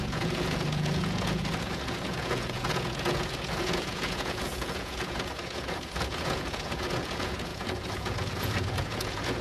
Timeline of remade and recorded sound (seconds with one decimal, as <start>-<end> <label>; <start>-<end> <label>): 0.0-9.4 remade